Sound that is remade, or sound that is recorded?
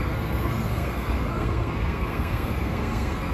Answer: remade